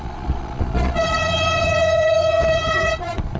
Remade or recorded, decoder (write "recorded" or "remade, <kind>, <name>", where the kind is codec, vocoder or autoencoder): remade, vocoder, Vocos